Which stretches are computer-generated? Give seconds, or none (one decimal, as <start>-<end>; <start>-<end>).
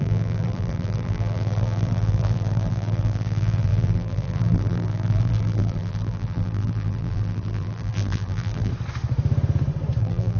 0.0-8.7; 10.0-10.4